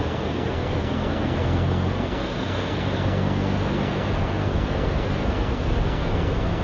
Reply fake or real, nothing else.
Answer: fake